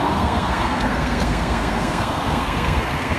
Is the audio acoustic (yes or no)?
no